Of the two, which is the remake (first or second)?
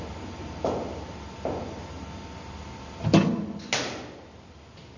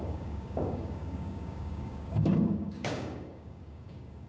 second